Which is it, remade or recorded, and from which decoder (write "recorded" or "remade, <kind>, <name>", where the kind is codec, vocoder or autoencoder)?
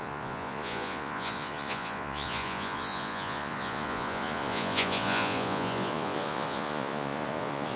remade, vocoder, Vocos